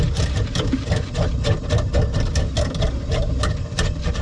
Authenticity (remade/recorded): recorded